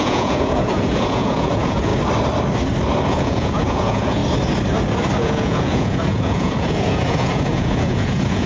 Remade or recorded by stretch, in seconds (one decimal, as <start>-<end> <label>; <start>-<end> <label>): 0.0-1.9 remade; 1.9-3.1 recorded; 3.1-4.2 remade; 4.2-5.2 recorded; 5.2-8.5 remade